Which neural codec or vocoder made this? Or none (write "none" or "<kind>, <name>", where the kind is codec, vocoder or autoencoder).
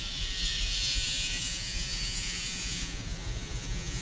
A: vocoder, Vocos